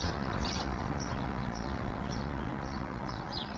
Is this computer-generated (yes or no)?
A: yes